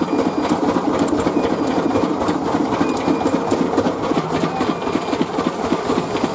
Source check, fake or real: real